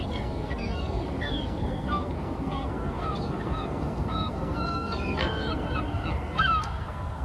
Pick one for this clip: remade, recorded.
remade